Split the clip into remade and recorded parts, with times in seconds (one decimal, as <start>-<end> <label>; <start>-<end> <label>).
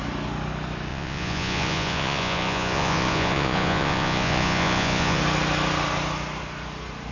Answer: 0.0-0.9 recorded; 0.9-5.2 remade; 5.2-7.1 recorded